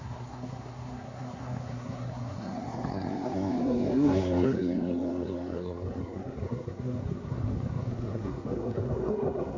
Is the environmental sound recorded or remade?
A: remade